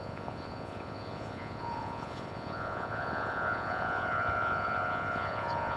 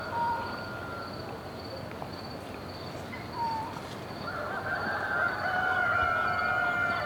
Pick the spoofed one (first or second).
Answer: first